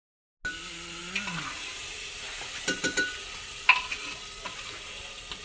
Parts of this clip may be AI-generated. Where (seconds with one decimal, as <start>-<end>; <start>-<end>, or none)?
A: none